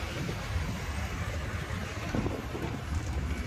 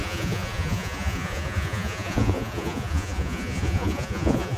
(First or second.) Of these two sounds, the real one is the first